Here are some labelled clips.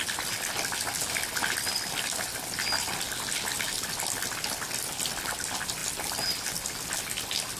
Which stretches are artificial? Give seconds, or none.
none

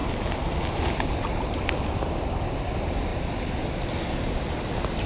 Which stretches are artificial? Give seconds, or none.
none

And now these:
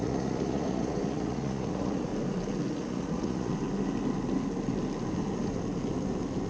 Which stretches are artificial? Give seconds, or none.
0.0-2.1 (vocoder, Vocos); 2.7-3.5

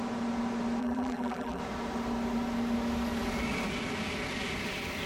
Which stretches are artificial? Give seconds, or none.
0.8-1.6 (vocoder, BigVGAN v2)

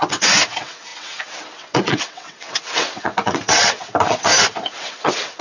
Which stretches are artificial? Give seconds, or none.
0.0-4.3 (vocoder, WaveNeXt); 4.8-5.4

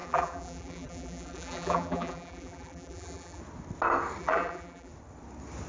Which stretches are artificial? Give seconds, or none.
0.0-3.4 (vocoder, BigVGAN v2); 4.2-4.9

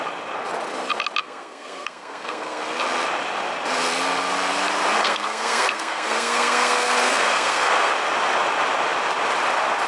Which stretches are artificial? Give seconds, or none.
1.2-2.6 (codec, SNAC); 5.0-7.9

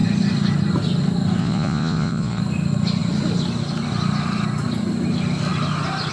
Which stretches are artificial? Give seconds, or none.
1.4-2.4 (vocoder, Vocos)